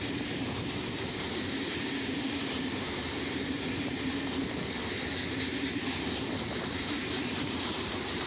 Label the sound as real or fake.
fake